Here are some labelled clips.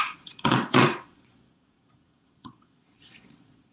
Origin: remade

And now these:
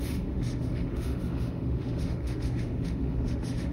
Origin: remade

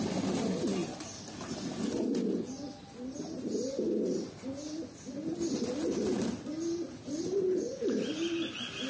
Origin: recorded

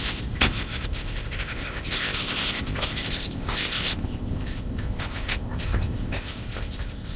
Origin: remade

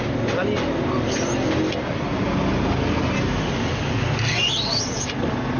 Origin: recorded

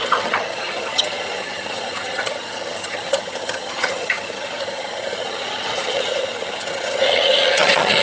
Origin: remade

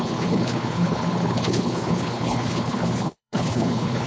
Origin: remade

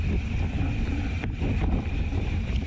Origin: recorded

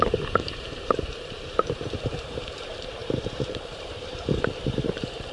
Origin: remade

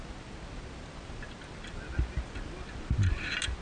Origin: recorded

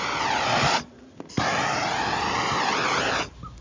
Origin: recorded